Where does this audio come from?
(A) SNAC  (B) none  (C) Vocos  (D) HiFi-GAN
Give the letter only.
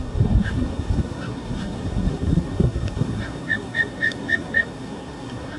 A